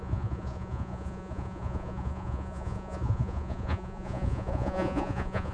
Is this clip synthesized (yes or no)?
yes